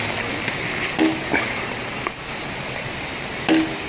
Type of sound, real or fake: real